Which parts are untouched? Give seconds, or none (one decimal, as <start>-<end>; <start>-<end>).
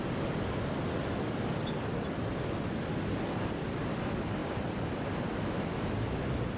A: 0.0-4.4; 5.4-6.6